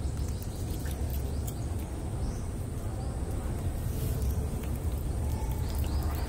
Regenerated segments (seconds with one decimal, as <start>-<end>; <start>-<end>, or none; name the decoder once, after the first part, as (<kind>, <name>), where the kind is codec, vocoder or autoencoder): none